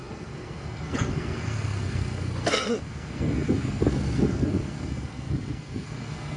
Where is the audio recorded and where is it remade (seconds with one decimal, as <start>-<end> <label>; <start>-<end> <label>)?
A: 0.0-6.4 remade